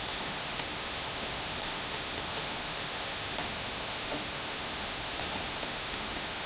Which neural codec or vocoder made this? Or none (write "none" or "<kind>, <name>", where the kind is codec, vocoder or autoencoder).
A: autoencoder, DAC-VAE